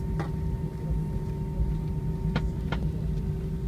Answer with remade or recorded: recorded